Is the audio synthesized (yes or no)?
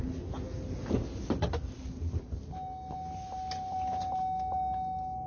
no